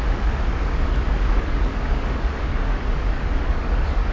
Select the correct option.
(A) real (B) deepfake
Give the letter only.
B